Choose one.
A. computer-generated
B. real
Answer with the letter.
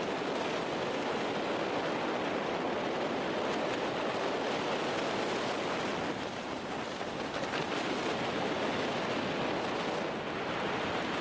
B